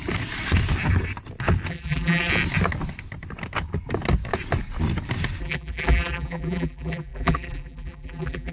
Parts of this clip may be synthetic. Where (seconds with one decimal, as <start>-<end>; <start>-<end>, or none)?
1.7-2.3; 5.4-8.5